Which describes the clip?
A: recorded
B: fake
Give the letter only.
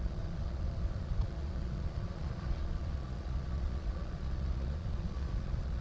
B